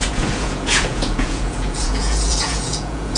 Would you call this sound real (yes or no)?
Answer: no